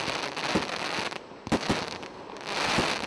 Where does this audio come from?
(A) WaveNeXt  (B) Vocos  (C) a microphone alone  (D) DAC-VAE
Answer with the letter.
C